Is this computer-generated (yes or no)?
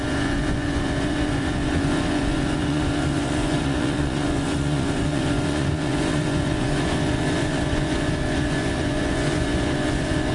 yes